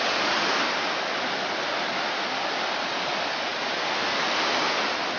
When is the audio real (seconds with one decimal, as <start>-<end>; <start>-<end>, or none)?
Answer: 0.0-5.2